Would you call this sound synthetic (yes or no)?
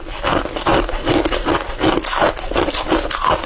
no